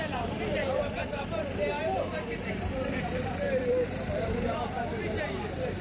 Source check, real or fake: fake